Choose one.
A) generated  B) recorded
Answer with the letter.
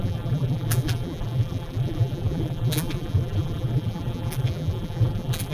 A